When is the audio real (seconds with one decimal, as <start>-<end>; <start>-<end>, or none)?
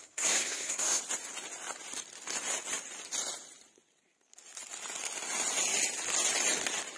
1.0-7.0